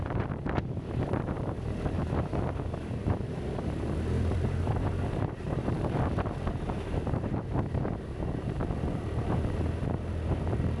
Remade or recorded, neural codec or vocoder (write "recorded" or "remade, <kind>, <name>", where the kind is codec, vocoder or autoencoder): remade, vocoder, BigVGAN v2